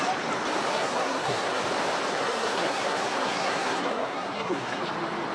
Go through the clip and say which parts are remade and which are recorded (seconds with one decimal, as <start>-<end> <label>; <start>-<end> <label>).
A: 0.0-0.7 recorded; 0.7-1.6 remade; 1.6-2.1 recorded; 2.1-4.8 remade; 4.8-5.3 recorded